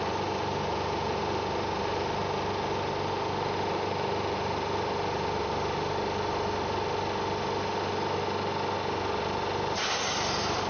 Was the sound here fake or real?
real